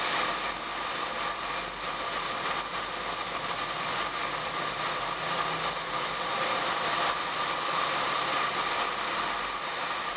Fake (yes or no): no